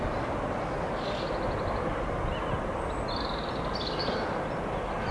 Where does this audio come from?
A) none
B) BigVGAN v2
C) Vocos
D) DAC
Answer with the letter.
A